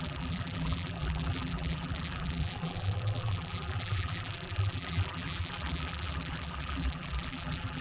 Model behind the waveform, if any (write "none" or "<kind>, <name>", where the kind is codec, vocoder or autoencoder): vocoder, BigVGAN v2